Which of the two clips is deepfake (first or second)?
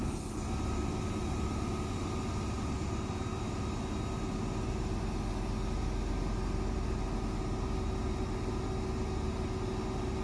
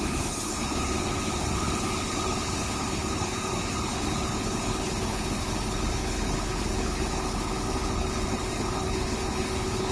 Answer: second